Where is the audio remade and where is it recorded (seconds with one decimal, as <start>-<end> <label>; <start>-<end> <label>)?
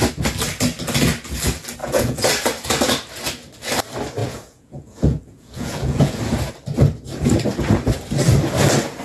0.0-1.8 recorded; 1.8-2.3 remade; 2.3-4.2 recorded; 4.2-6.2 remade; 6.2-9.0 recorded